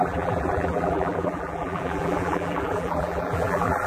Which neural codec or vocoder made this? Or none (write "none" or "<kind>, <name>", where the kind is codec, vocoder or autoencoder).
vocoder, BigVGAN v2